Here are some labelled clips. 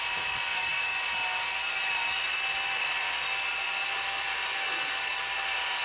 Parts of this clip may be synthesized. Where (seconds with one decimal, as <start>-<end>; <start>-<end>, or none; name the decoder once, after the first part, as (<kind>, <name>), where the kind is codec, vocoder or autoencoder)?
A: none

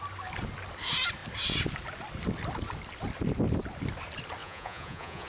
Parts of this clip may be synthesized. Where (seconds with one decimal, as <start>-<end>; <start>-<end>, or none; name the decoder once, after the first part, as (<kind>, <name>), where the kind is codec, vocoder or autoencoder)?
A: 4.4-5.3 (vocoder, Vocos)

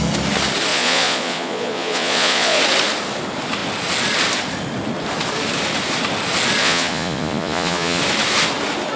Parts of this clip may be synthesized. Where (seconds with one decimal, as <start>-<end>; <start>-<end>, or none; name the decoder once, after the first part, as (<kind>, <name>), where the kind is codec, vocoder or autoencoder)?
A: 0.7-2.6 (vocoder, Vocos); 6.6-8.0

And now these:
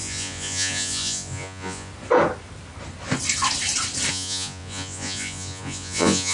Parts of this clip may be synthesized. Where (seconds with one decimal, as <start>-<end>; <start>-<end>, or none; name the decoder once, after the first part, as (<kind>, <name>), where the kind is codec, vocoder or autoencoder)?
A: 0.0-1.9 (vocoder, Vocos); 4.1-6.3

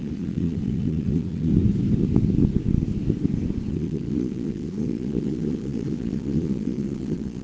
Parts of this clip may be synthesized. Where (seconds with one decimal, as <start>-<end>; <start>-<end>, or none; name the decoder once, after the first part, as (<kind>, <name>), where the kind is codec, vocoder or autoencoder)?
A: 0.0-1.5 (vocoder, Vocos); 3.7-7.4